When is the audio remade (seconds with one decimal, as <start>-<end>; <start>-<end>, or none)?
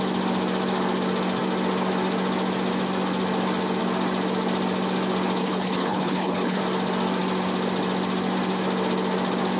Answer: 5.4-6.6